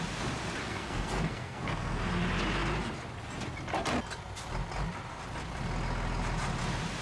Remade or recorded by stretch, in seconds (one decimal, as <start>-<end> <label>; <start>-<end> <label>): 0.0-0.6 recorded; 0.6-2.1 remade; 2.1-7.0 recorded